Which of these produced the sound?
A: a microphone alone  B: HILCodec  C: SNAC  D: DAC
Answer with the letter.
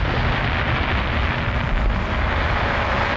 A